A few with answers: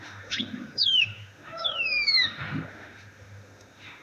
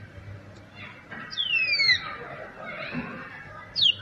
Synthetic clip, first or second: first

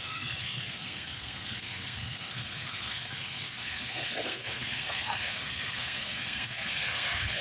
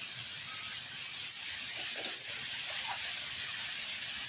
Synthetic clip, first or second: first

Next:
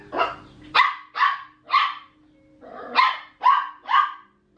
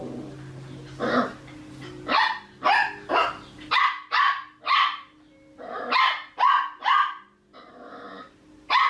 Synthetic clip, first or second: first